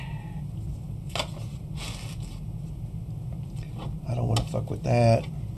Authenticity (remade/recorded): recorded